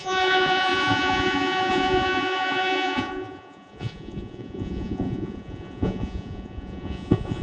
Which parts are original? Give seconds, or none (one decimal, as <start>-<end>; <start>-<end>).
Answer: none